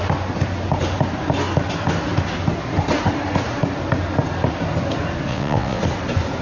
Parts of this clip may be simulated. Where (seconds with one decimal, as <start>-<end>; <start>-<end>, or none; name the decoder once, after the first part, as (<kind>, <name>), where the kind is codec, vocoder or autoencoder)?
5.3-5.8 (vocoder, WaveNeXt)